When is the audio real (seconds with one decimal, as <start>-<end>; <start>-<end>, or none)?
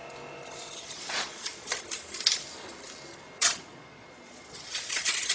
0.0-0.6; 1.7-3.4